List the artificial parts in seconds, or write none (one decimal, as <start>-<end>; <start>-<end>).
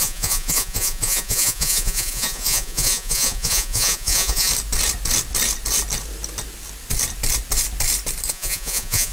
0.0-4.5; 8.3-9.1